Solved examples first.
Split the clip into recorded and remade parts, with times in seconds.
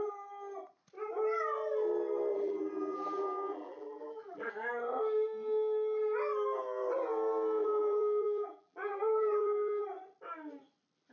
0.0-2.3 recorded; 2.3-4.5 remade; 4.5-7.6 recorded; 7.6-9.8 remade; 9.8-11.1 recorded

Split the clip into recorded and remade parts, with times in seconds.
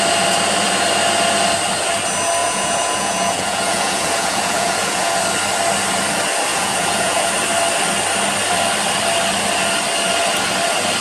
0.0-2.4 recorded; 2.4-5.2 remade; 5.2-6.5 recorded; 6.5-7.3 remade; 7.3-11.0 recorded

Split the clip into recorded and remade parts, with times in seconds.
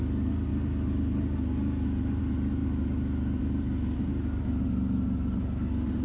0.0-6.0 recorded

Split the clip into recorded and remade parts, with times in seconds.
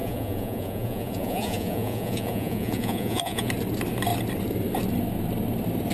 0.0-3.5 remade; 3.5-5.9 recorded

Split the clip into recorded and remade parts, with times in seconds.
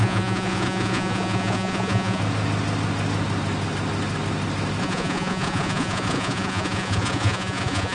0.0-2.2 remade; 2.2-4.8 recorded; 4.8-7.9 remade